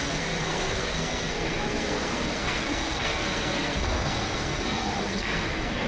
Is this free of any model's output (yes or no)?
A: no